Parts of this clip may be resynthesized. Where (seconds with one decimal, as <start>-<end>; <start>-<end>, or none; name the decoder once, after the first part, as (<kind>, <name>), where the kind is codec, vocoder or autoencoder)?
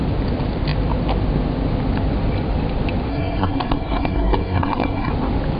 3.1-5.1 (codec, SNAC)